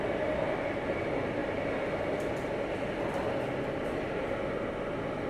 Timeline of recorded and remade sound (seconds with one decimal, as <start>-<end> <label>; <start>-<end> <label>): 0.0-5.3 recorded